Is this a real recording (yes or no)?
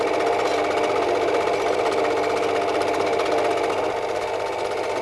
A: yes